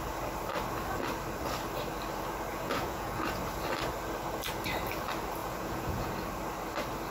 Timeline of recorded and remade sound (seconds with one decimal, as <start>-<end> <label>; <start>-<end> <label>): 0.0-2.5 recorded; 2.5-3.4 remade; 3.4-5.4 recorded; 5.4-6.1 remade; 6.1-7.1 recorded